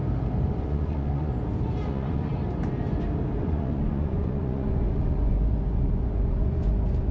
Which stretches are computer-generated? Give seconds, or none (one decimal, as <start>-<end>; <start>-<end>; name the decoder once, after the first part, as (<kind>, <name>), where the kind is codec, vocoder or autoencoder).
0.5-1.3 (vocoder, Vocos); 1.9-2.3; 3.4-7.1